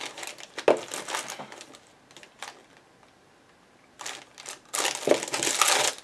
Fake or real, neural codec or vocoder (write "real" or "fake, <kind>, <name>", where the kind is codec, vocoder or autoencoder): real